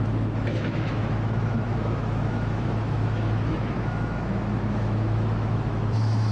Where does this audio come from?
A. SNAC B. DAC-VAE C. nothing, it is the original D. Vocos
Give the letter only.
B